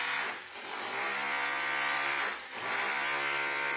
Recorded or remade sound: recorded